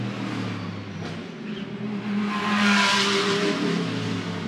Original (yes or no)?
yes